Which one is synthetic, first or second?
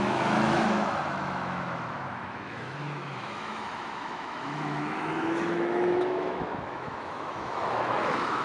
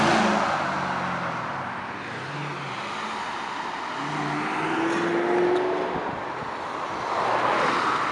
first